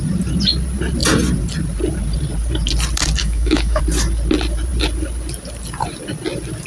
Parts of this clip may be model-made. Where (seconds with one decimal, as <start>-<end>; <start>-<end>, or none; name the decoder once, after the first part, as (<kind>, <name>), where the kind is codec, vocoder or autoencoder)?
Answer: 3.2-3.8 (autoencoder, DAC-VAE)